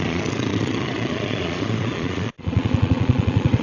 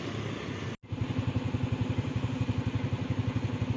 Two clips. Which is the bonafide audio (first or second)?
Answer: second